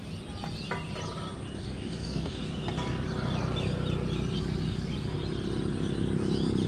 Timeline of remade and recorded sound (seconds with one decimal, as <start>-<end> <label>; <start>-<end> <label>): 0.0-1.6 recorded; 1.6-2.4 remade; 2.4-6.7 recorded